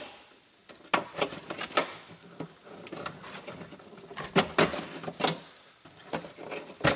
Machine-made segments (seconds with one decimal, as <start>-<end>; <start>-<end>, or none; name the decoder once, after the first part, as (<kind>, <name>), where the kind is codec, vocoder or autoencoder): none